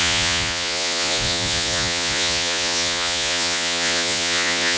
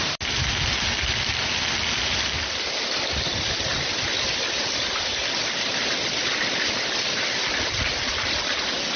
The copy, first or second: first